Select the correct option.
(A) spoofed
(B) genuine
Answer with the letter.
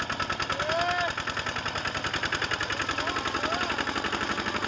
B